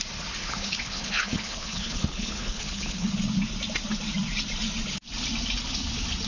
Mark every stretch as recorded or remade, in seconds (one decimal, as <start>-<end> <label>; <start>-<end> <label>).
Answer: 0.0-0.4 recorded; 0.4-3.1 remade; 3.1-6.3 recorded